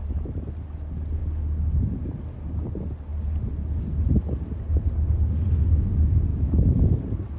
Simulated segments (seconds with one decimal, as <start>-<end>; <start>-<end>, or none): 6.3-7.0